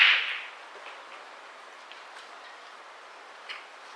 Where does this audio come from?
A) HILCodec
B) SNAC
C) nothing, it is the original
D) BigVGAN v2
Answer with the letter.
C